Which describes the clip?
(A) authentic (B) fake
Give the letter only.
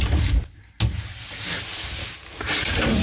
A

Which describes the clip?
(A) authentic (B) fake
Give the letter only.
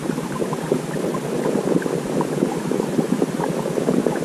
A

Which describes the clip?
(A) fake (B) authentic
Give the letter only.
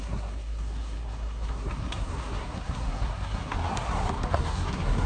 A